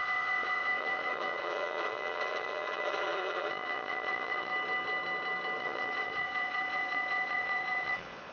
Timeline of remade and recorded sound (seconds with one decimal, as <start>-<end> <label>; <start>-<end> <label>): 0.0-4.5 remade; 4.5-5.6 recorded; 5.6-8.3 remade